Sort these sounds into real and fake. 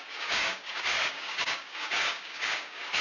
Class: fake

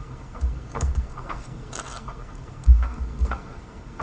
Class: fake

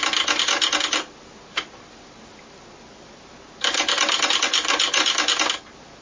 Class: real